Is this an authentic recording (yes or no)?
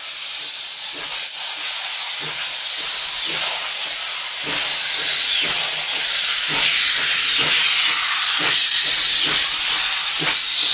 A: yes